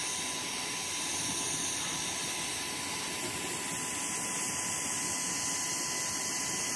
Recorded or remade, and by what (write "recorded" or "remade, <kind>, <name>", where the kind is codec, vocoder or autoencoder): recorded